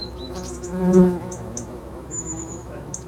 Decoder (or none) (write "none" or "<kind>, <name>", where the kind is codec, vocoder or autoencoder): autoencoder, DAC-VAE